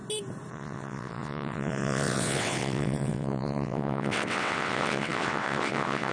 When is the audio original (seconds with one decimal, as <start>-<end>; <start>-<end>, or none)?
0.0-0.5